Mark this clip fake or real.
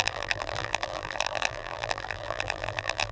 fake